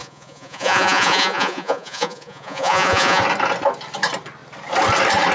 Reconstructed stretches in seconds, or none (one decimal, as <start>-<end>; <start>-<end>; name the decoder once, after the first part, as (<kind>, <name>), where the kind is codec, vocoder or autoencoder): 0.0-3.2 (vocoder, Vocos)

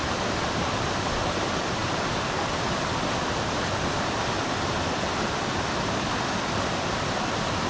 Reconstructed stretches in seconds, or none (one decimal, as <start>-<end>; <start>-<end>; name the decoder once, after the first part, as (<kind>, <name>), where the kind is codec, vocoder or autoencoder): none

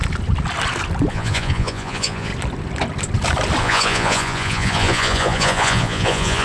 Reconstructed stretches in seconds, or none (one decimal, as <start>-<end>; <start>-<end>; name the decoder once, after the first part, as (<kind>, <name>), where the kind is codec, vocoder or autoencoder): 1.1-2.3 (vocoder, Vocos); 3.6-6.4

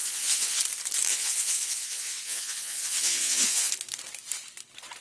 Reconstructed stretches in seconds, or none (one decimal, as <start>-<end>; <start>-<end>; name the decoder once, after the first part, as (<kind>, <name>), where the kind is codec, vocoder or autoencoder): 0.0-0.6 (vocoder, Vocos); 1.1-3.7

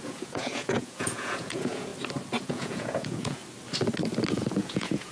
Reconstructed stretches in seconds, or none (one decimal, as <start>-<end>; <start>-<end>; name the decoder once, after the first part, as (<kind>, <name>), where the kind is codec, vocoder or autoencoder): 0.0-1.9 (vocoder, Vocos); 2.4-3.4; 4.3-5.1

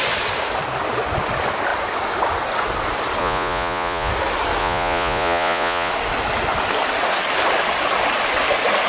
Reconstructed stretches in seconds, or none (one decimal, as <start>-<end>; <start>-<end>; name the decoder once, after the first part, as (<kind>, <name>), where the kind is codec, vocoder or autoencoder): 3.2-4.1 (vocoder, Vocos); 4.6-5.9